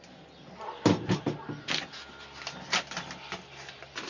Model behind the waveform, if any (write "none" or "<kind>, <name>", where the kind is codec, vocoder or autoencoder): none